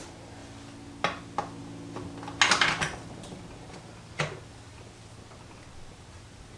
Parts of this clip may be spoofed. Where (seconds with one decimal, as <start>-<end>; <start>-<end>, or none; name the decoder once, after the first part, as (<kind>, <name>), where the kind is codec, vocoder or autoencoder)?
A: none